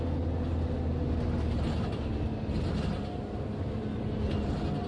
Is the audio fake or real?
real